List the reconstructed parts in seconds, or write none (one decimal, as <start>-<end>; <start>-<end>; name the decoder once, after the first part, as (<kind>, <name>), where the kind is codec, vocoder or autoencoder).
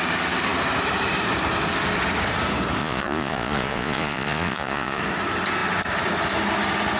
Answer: 2.8-5.0 (vocoder, Vocos)